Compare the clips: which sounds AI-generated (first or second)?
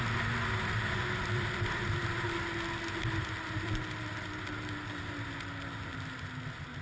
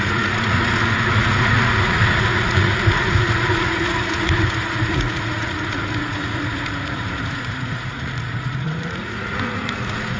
second